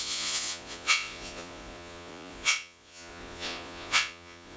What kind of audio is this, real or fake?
fake